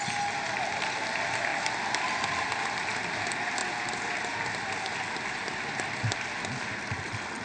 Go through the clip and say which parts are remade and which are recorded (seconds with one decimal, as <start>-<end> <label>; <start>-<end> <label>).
0.0-7.4 recorded